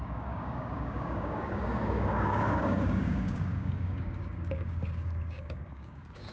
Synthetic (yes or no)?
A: yes